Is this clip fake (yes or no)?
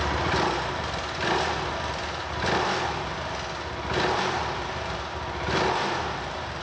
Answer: no